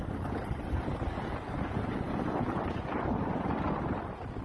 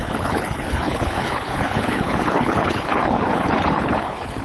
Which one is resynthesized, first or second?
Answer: second